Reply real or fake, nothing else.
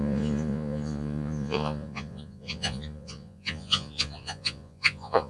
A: fake